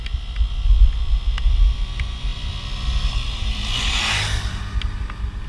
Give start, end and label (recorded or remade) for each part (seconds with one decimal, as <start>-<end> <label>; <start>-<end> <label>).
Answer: 0.0-2.3 recorded; 2.3-4.6 remade; 4.6-5.5 recorded